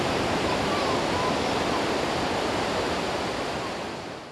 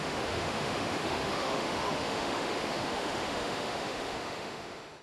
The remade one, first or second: second